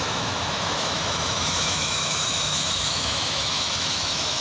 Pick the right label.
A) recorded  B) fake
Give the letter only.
B